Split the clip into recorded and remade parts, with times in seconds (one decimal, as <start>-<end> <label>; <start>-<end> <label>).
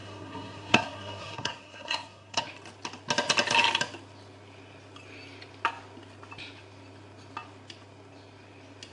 0.0-2.4 remade; 2.4-8.9 recorded